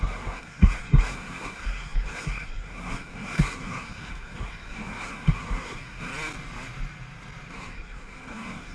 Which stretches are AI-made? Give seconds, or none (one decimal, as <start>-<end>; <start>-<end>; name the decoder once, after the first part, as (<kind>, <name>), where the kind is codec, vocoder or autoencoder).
0.0-6.1 (codec, SNAC); 7.5-8.7